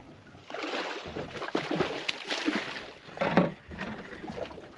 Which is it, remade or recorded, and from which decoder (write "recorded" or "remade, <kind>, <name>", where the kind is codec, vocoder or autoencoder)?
recorded